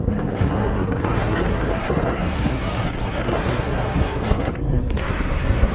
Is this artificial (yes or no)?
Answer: yes